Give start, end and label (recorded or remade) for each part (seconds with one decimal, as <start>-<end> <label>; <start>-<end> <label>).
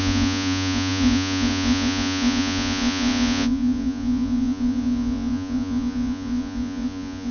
0.0-7.3 remade